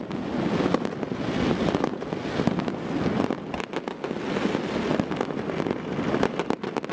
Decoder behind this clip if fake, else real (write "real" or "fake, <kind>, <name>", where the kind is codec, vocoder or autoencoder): real